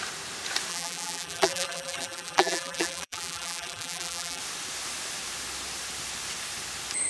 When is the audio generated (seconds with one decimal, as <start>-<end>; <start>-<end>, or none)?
0.7-4.4